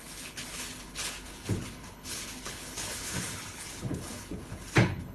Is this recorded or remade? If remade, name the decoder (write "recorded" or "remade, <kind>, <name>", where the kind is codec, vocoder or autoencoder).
remade, codec, HILCodec